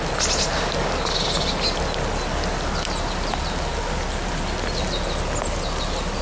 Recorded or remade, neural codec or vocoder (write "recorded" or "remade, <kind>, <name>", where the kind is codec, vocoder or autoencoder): recorded